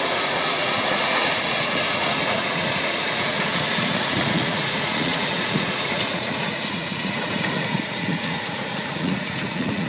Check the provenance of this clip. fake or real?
fake